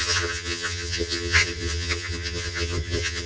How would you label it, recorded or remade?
remade